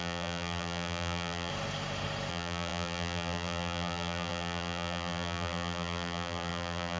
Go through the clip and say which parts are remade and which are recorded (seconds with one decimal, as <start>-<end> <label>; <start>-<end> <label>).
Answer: 0.0-1.5 remade; 1.5-2.3 recorded; 2.3-7.0 remade